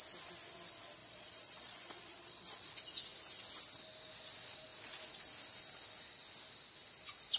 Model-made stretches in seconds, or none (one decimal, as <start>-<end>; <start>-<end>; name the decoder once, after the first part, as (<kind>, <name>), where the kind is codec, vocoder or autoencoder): 1.0-2.7 (vocoder, Vocos)